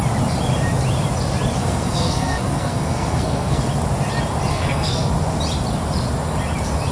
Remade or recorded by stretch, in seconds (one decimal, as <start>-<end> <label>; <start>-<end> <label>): 0.0-1.6 recorded; 1.6-3.6 remade; 3.6-4.5 recorded; 4.5-5.1 remade; 5.1-6.9 recorded